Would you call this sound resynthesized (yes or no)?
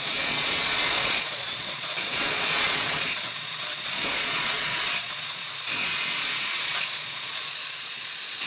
yes